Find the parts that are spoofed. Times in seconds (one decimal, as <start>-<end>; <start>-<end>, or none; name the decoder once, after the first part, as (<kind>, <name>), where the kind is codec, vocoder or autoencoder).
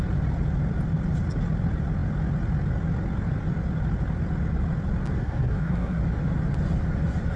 5.2-6.0 (codec, SNAC)